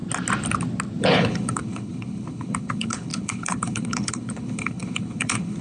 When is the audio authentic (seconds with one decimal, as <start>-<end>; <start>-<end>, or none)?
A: 0.0-1.0